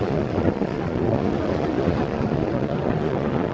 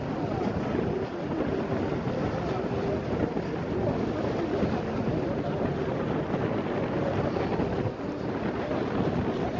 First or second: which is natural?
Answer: second